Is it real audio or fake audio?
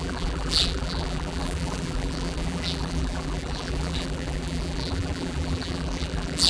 fake